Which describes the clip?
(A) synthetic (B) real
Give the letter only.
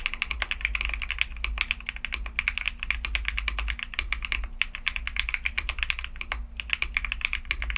B